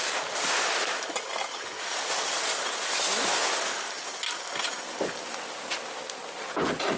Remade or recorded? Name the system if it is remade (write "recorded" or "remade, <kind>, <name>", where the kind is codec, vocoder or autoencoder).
recorded